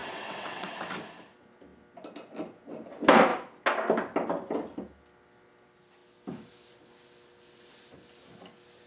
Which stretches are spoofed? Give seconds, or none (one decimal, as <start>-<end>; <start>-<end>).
0.0-0.7